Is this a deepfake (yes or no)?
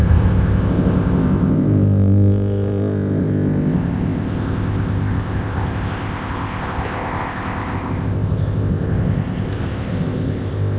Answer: yes